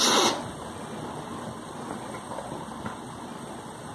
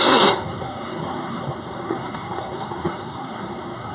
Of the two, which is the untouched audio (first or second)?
first